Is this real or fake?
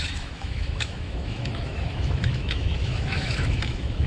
fake